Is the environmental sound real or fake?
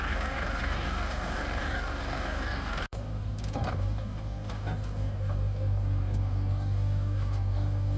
fake